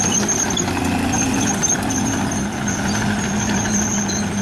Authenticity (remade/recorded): recorded